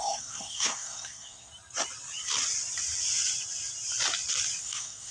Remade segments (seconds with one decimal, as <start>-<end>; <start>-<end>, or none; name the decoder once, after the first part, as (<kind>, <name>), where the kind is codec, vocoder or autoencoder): 0.0-1.5 (codec, SNAC); 4.6-5.1